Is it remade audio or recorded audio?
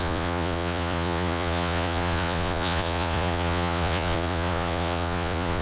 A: remade